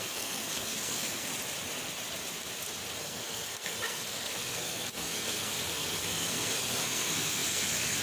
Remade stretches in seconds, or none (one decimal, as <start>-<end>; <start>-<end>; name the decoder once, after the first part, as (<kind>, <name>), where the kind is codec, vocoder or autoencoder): 0.0-1.3 (codec, SNAC); 3.0-8.0